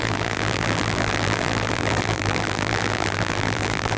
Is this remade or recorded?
remade